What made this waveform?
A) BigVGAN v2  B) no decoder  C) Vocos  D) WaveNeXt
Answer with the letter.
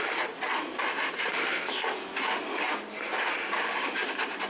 B